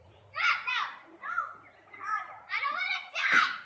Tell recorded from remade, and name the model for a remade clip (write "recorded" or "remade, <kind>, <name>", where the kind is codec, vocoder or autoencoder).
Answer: remade, vocoder, Vocos